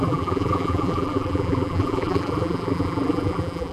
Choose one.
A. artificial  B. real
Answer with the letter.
A